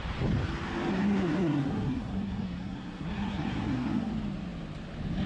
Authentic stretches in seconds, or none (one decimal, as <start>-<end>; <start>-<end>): 0.0-0.9; 4.1-5.3